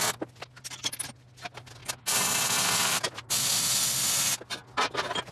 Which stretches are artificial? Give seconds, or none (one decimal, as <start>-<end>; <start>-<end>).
none